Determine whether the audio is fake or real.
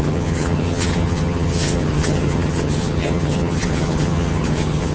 fake